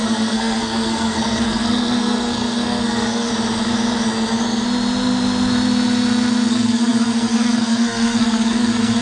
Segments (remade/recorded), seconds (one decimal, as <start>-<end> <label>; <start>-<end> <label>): 0.0-3.3 remade; 3.3-6.5 recorded; 6.5-9.0 remade